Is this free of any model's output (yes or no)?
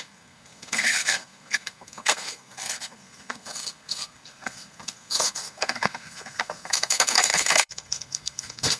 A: no